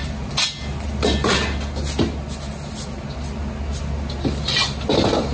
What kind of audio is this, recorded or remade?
recorded